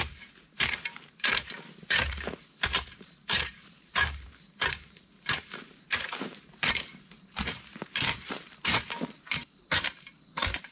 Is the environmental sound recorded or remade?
remade